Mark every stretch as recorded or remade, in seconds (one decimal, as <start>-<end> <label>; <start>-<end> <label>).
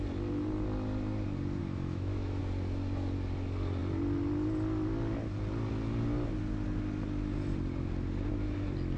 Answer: 0.0-1.6 recorded; 1.6-2.4 remade; 2.4-9.0 recorded